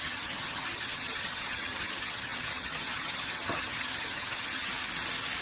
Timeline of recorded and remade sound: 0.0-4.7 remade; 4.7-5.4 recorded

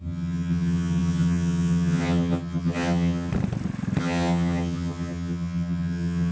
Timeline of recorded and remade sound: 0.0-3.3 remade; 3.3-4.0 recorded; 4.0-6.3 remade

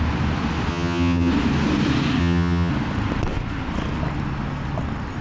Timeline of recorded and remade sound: 0.0-0.7 recorded; 0.7-1.3 remade; 1.3-2.2 recorded; 2.2-2.7 remade; 2.7-5.2 recorded

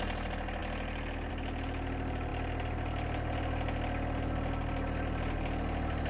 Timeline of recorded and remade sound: 0.0-6.1 recorded